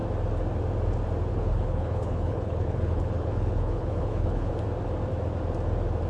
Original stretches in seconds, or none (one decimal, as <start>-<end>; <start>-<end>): 0.0-1.3; 4.5-6.1